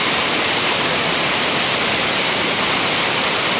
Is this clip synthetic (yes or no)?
no